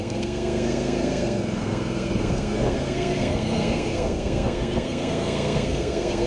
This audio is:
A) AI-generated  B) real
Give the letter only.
A